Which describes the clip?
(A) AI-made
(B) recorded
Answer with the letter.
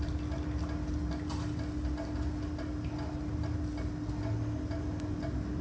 B